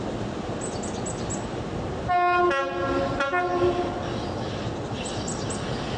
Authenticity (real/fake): real